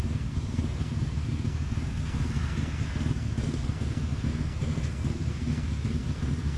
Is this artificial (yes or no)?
yes